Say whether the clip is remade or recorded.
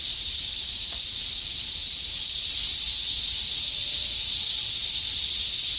remade